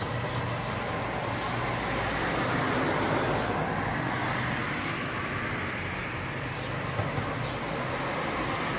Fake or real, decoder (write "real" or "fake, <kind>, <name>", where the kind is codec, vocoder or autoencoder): real